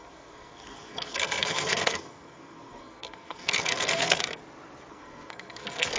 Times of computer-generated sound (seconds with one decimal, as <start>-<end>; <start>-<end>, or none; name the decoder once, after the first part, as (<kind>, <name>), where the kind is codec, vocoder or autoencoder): 0.0-4.4 (codec, SNAC); 4.9-6.0